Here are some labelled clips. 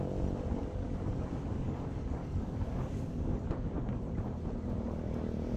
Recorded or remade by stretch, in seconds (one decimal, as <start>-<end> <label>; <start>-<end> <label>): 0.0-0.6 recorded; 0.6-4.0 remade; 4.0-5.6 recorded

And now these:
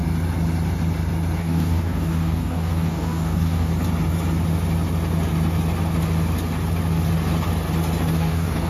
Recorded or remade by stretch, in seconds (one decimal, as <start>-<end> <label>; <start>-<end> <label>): 0.0-1.4 recorded; 1.4-3.7 remade; 3.7-8.1 recorded; 8.1-8.7 remade

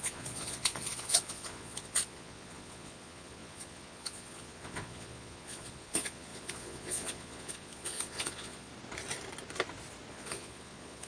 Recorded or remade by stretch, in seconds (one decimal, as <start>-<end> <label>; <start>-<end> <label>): 0.0-8.7 remade; 8.7-10.1 recorded; 10.1-11.1 remade

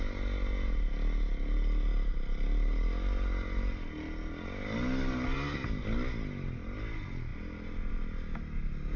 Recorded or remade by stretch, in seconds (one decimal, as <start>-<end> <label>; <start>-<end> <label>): 0.0-9.0 recorded